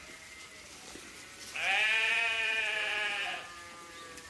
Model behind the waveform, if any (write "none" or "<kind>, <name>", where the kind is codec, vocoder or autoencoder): vocoder, BigVGAN v2